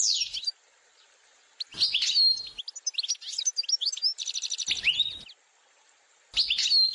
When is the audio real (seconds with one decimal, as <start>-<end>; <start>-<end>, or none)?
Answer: 0.0-6.9